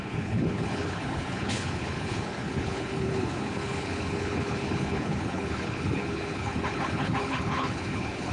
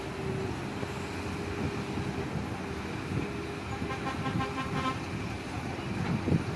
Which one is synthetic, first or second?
first